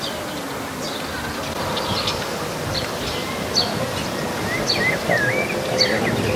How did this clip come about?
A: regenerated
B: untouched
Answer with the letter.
B